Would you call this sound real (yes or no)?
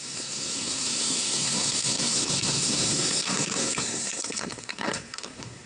no